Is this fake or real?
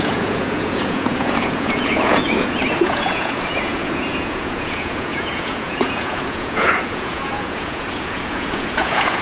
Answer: fake